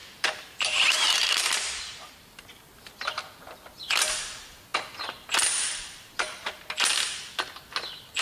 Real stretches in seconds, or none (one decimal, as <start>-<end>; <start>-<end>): 2.9-8.2